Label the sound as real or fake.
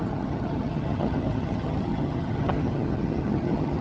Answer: fake